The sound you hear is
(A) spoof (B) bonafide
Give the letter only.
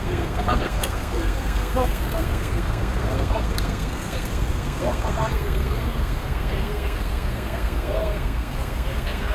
A